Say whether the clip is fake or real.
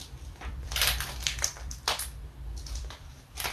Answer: fake